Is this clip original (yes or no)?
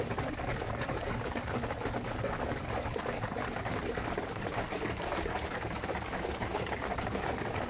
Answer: no